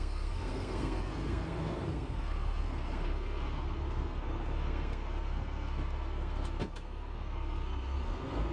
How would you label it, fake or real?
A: fake